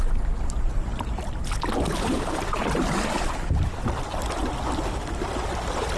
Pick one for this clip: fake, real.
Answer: real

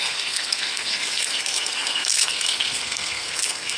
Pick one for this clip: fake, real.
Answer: fake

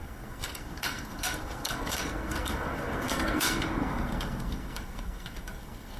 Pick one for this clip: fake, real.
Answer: fake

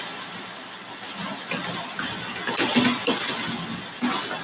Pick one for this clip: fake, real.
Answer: real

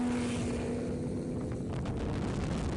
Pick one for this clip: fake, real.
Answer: real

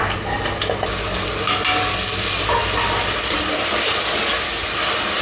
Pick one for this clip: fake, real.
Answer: real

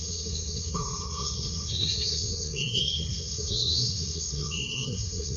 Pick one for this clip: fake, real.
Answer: fake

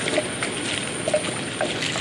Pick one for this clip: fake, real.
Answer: real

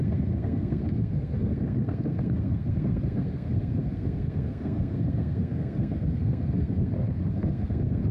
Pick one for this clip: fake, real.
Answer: fake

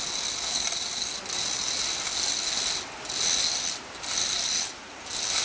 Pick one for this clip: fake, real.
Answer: real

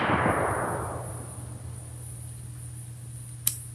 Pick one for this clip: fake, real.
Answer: real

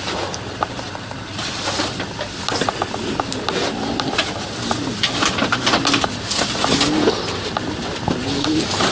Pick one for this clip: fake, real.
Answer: real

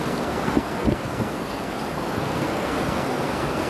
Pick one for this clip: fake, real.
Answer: fake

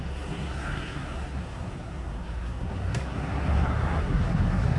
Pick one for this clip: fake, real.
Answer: fake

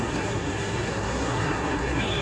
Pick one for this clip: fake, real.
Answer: fake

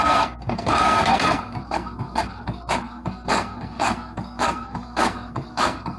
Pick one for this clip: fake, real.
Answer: fake